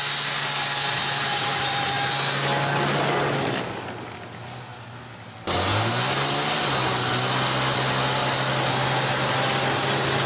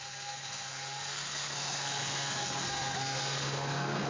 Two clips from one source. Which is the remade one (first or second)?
second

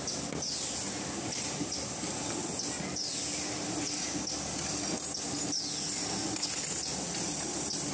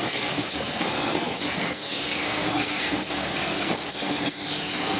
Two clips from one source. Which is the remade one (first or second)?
second